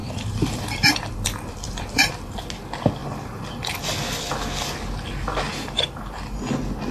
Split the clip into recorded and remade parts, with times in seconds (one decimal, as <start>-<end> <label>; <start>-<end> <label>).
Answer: 0.0-2.1 remade; 2.1-3.0 recorded; 3.0-3.7 remade; 3.7-5.5 recorded; 5.5-6.4 remade; 6.4-6.9 recorded